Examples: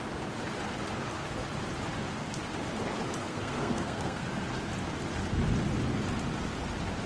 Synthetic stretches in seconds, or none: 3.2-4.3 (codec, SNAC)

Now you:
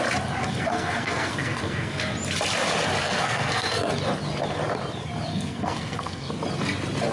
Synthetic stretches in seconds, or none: 0.4-2.0 (codec, SNAC); 3.0-3.9; 5.3-6.3